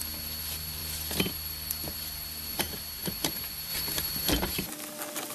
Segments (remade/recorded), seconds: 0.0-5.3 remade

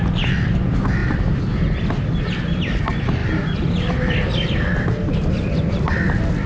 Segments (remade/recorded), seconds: 0.0-6.5 recorded

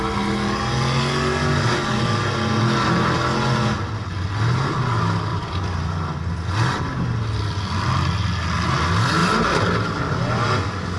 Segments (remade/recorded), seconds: 0.0-5.3 recorded; 5.3-6.0 remade; 6.0-11.0 recorded

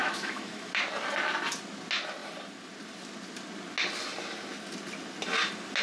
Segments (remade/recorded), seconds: 0.0-0.7 remade; 0.7-5.8 recorded

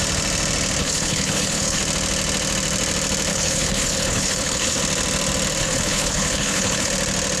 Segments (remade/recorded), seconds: 0.0-0.8 recorded; 0.8-1.8 remade; 1.8-3.3 recorded; 3.3-4.8 remade; 4.8-5.6 recorded; 5.6-6.9 remade; 6.9-7.4 recorded

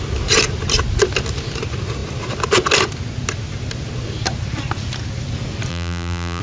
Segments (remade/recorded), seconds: 0.0-5.7 recorded; 5.7-6.4 remade

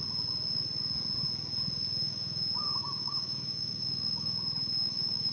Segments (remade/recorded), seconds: 0.0-2.0 recorded; 2.0-5.3 remade

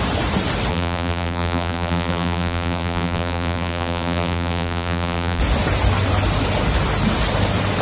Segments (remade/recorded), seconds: 0.0-0.7 recorded; 0.7-5.4 remade; 5.4-7.8 recorded